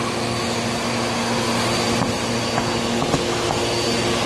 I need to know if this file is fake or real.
real